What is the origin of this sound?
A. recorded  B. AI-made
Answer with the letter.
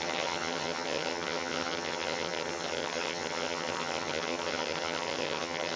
B